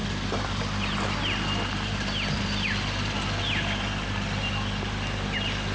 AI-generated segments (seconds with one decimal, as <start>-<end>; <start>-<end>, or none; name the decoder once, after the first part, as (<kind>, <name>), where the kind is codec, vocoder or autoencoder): none